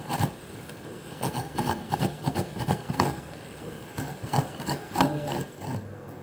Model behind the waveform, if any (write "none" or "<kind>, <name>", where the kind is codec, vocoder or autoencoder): codec, SNAC